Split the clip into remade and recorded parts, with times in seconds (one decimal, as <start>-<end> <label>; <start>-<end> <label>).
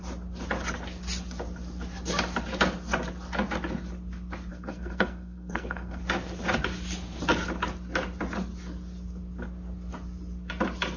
0.0-4.5 recorded; 4.5-6.0 remade; 6.0-11.0 recorded